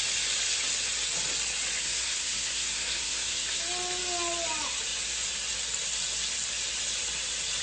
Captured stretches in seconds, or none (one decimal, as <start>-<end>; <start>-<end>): 0.0-1.8; 3.6-7.6